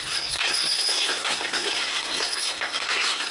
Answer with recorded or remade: remade